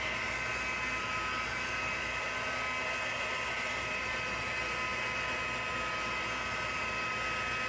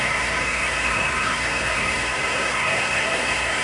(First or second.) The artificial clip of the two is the second